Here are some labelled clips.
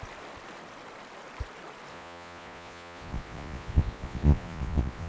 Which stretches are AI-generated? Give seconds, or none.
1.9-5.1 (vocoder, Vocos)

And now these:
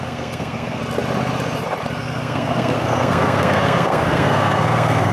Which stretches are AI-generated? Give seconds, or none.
0.0-0.8 (codec, SNAC); 2.0-5.1

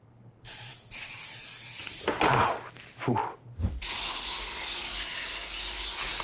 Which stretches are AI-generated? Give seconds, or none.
4.8-5.3 (vocoder, BigVGAN v2)

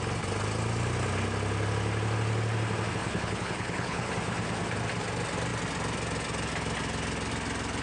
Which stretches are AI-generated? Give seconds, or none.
3.0-4.1 (codec, HILCodec)

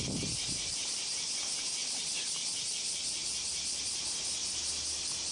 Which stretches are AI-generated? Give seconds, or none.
none

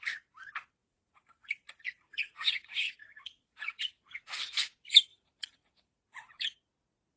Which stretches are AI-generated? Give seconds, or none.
0.8-4.2 (vocoder, Vocos); 5.1-6.5

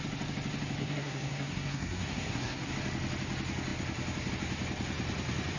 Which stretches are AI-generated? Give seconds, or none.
0.8-2.7 (codec, SNAC)

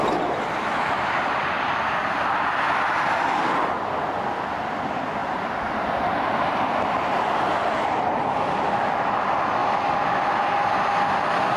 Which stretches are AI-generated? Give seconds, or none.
2.0-2.5 (vocoder, BigVGAN v2); 5.2-7.5